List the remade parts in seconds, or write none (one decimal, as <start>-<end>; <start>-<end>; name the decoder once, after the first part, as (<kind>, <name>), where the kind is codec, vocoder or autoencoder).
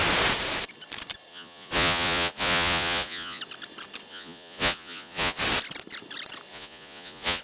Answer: 1.3-3.4 (vocoder, Vocos); 4.1-5.4; 6.5-7.4